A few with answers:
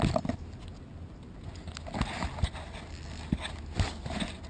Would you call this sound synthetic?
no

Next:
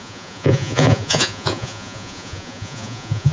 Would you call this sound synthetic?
yes